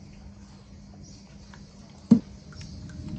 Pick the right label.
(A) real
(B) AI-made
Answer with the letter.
A